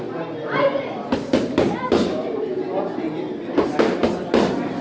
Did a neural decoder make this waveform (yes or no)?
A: no